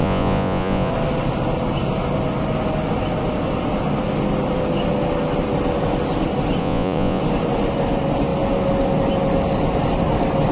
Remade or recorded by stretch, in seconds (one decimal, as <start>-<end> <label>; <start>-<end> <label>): 0.0-0.9 remade; 0.9-6.6 recorded; 6.6-7.2 remade; 7.2-10.5 recorded